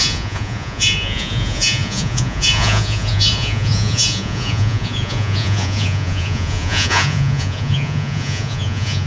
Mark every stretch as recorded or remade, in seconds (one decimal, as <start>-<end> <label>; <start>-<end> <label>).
0.0-9.1 remade